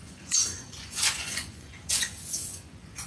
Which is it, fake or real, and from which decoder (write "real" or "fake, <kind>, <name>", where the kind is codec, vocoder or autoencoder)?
fake, vocoder, Vocos